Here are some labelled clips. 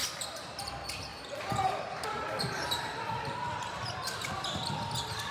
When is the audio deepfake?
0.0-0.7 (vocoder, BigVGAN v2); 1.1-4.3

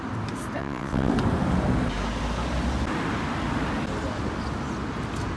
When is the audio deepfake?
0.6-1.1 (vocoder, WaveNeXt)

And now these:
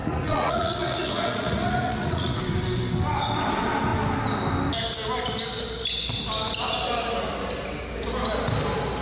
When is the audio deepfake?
0.0-2.4 (vocoder, Vocos)

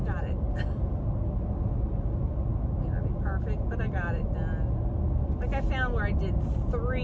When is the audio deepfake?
none

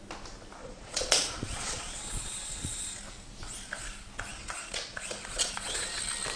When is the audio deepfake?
0.6-3.0 (vocoder, Vocos); 4.3-6.0